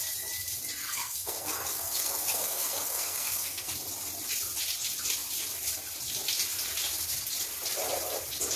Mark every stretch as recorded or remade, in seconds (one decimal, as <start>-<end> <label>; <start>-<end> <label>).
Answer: 0.0-0.8 recorded; 0.8-3.7 remade; 3.7-8.6 recorded